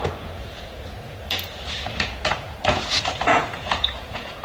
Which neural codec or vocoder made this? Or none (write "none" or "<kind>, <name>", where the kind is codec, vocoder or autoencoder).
vocoder, Vocos